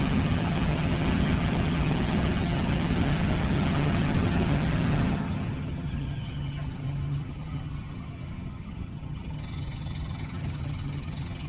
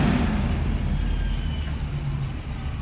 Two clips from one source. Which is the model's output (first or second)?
first